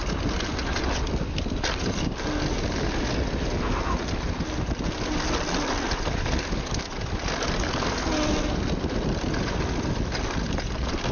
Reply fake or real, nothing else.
real